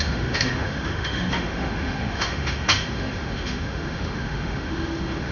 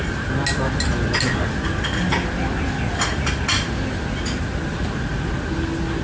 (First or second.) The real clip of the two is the second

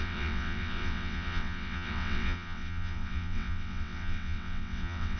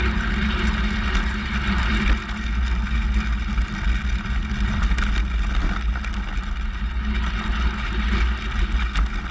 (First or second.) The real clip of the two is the second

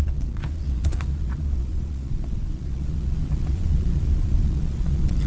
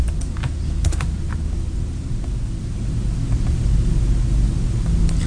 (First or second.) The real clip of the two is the second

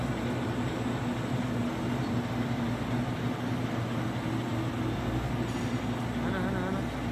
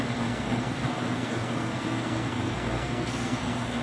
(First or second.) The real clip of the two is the first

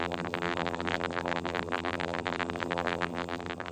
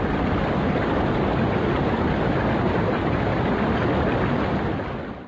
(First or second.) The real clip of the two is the second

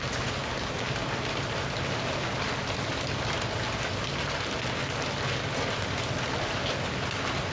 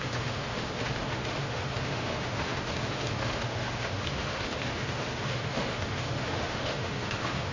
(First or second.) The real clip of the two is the first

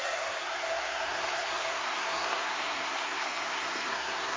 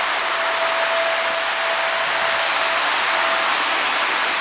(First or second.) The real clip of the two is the second